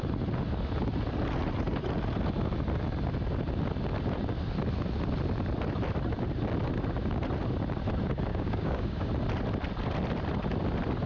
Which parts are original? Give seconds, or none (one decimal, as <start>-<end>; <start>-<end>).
0.0-8.3; 9.1-11.1

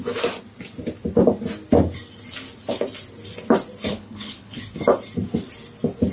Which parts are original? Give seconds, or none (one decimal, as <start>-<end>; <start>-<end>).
0.0-3.9; 4.6-6.1

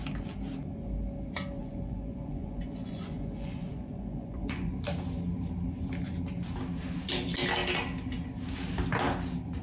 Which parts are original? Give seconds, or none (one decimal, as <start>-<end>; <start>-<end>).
0.0-1.6; 4.7-9.6

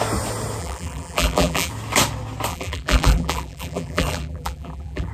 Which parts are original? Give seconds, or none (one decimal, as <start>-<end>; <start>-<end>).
0.0-0.6; 1.7-2.5

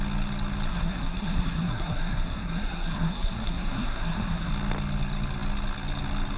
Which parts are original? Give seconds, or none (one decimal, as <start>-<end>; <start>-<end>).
0.0-0.7; 4.5-6.4

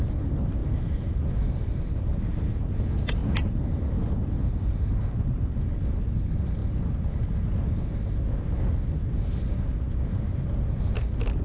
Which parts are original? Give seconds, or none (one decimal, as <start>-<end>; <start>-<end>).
0.0-0.6; 1.2-1.7; 2.8-3.2; 5.6-11.4